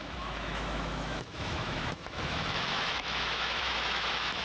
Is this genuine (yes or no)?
no